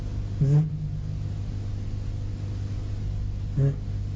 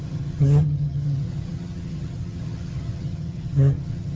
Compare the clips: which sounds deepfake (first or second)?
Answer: second